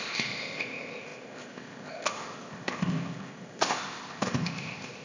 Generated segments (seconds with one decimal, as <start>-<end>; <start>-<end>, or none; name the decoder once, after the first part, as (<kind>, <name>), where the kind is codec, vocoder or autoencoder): 0.0-5.0 (codec, ZipCodec)

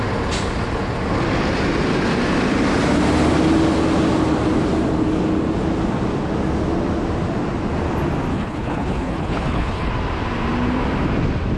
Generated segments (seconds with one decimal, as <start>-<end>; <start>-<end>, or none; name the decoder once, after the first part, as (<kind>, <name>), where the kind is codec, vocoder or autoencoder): 8.3-9.9 (codec, HILCodec)